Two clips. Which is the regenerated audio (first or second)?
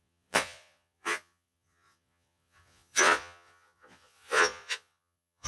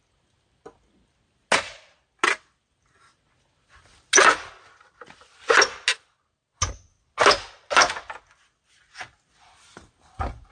first